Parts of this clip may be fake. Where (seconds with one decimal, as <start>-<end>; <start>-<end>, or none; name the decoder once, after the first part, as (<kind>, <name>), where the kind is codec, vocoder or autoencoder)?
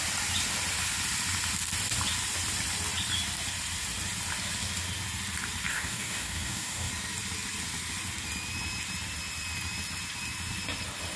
5.7-6.9 (codec, DAC)